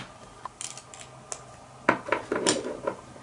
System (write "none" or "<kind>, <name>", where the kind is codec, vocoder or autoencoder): none